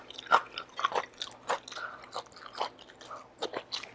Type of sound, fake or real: real